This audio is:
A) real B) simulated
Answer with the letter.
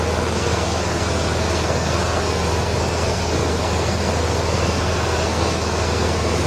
B